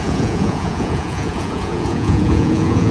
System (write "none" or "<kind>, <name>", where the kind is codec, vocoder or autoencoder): vocoder, Vocos